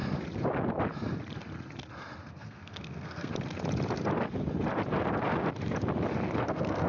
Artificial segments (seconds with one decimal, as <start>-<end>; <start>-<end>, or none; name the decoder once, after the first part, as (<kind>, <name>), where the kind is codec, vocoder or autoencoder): 2.3-3.3 (codec, SNAC); 6.4-6.9